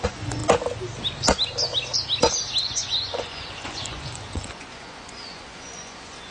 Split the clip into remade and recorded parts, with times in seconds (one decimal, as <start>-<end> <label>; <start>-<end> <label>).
0.0-0.4 remade; 0.4-2.6 recorded; 2.6-6.3 remade